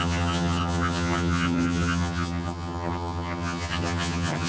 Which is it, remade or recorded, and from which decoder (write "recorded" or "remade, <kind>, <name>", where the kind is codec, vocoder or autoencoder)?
remade, vocoder, HiFi-GAN